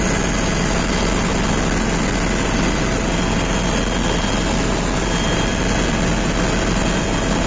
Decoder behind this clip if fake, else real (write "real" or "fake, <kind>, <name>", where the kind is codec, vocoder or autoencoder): real